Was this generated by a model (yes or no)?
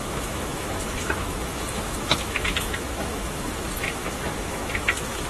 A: yes